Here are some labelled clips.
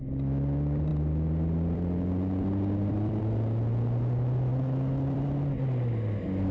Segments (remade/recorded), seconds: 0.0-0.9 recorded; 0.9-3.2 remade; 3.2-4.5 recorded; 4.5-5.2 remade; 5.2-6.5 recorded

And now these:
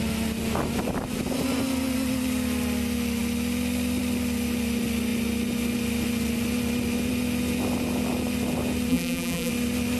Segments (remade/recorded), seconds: 0.0-8.9 recorded; 8.9-9.5 remade; 9.5-10.0 recorded

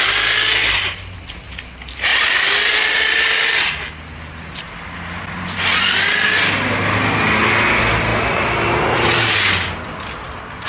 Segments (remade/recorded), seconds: 0.0-10.7 recorded

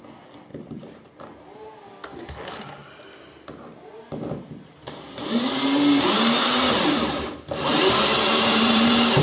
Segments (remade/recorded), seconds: 0.0-0.5 recorded; 0.5-1.1 remade; 1.1-2.8 recorded; 2.8-6.7 remade; 6.7-7.7 recorded; 7.7-9.2 remade